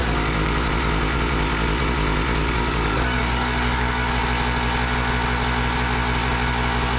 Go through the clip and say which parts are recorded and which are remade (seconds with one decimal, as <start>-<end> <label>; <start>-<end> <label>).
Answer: 0.0-0.7 remade; 0.7-2.4 recorded; 2.4-4.2 remade; 4.2-7.0 recorded